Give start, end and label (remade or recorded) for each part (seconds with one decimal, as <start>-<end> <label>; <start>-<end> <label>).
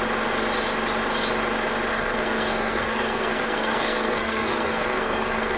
0.0-1.9 recorded; 1.9-5.6 remade